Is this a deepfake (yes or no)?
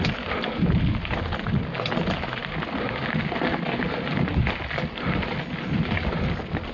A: no